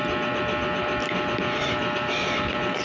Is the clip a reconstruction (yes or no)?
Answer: no